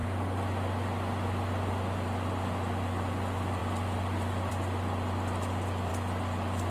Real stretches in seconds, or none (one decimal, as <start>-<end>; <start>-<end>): 0.0-6.7